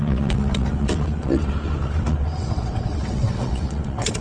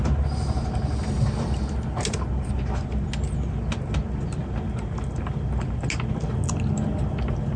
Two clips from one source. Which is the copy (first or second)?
first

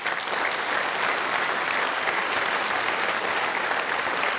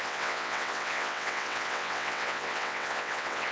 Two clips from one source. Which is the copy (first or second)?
second